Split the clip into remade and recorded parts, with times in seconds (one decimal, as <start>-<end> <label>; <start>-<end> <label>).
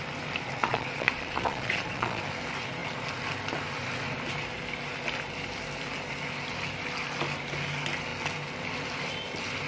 0.0-0.6 recorded; 0.6-2.2 remade; 2.2-9.7 recorded